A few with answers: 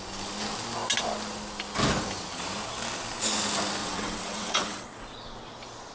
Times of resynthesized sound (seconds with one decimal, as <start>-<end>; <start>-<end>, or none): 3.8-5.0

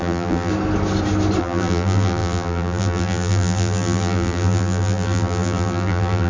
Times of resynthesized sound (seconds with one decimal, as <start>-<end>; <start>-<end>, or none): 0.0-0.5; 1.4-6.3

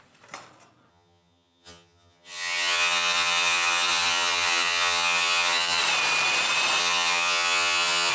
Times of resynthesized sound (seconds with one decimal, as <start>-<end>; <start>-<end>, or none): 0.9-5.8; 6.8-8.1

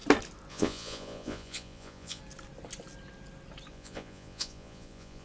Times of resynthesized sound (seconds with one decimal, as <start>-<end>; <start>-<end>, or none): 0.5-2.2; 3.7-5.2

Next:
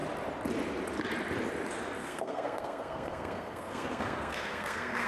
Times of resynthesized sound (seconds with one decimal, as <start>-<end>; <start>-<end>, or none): 2.0-5.1

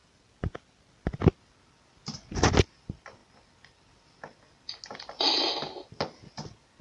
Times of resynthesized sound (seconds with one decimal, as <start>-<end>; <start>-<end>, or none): none

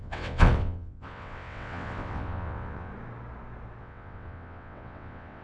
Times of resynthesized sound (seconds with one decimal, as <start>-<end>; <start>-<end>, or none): 0.0-2.9; 3.8-5.4

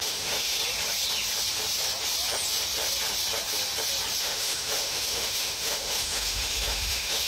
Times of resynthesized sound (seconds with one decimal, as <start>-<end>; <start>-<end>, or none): 0.0-0.6; 4.2-7.3